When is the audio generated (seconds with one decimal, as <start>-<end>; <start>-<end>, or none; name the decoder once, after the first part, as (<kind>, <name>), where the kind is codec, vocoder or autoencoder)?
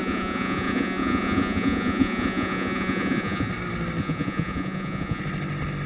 0.0-3.5 (vocoder, Vocos); 4.0-5.2